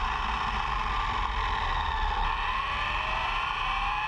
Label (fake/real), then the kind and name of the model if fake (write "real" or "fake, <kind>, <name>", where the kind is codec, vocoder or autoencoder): fake, vocoder, BigVGAN v2